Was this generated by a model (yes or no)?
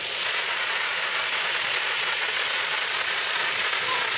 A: yes